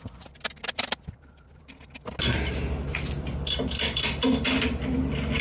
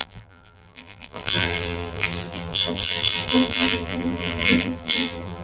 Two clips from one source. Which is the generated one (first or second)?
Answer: second